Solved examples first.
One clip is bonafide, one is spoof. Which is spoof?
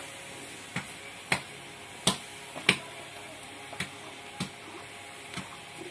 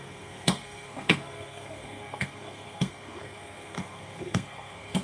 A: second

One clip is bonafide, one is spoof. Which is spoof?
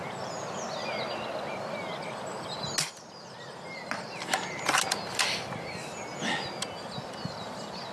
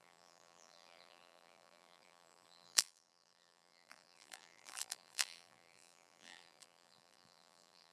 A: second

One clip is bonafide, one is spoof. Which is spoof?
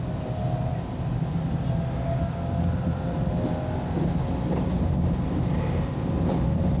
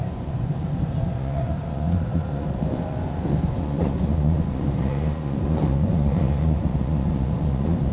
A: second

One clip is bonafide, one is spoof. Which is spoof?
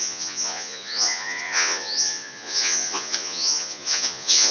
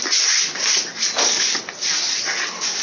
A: first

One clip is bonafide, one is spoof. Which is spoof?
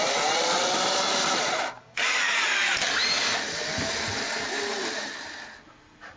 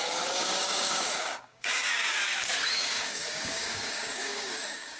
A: second